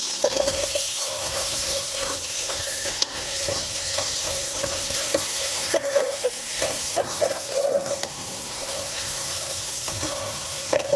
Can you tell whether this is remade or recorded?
remade